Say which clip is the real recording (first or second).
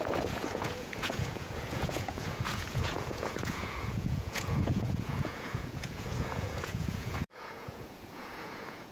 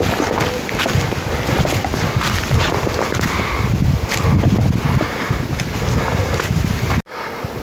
second